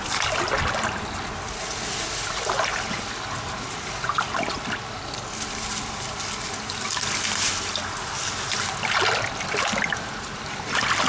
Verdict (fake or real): real